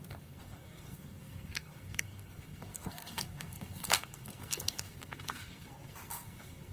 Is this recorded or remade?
remade